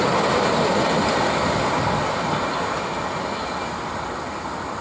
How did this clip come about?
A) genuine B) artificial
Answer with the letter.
A